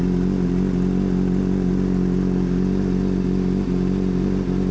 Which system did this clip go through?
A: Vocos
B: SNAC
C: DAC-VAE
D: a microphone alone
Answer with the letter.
D